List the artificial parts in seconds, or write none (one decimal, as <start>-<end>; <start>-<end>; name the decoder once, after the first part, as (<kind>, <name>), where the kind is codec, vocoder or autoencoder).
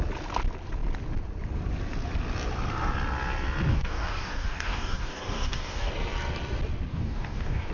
3.7-5.9 (codec, DAC); 6.9-7.7